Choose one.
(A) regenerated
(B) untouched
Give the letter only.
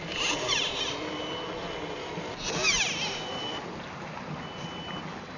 B